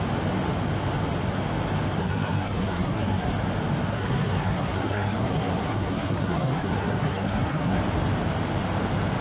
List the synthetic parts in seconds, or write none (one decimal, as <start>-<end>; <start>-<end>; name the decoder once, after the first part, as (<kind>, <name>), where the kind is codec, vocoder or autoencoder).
2.0-3.3 (codec, SNAC); 3.9-7.8